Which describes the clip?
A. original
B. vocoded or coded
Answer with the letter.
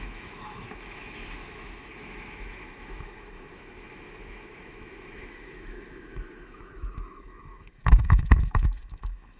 B